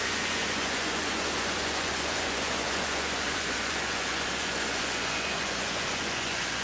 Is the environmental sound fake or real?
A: fake